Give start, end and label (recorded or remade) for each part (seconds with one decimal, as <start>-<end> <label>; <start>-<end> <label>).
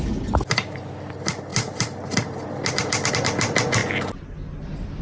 0.0-5.0 recorded